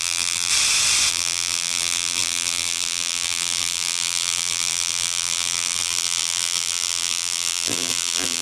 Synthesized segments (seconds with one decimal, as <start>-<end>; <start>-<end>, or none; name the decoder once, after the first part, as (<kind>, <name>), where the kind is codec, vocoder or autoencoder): 0.0-0.5 (vocoder, BigVGAN v2); 1.1-8.4